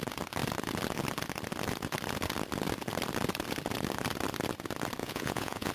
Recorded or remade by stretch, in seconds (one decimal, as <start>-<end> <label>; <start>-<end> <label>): 0.0-5.0 recorded; 5.0-5.7 remade